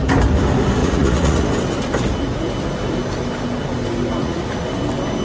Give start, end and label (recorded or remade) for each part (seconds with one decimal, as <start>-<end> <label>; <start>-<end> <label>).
0.0-0.8 recorded; 0.8-1.5 remade; 1.5-4.2 recorded; 4.2-4.7 remade; 4.7-5.2 recorded